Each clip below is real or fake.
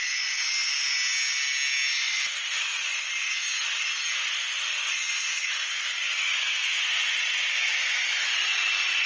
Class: real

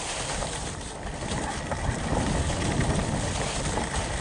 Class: real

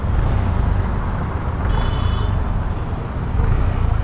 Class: real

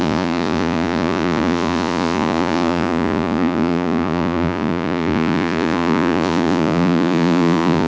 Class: fake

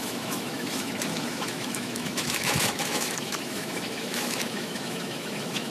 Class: fake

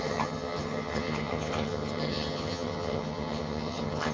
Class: fake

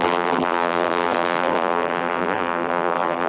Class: fake